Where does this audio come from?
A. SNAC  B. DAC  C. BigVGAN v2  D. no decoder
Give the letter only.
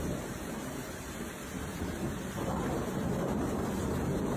C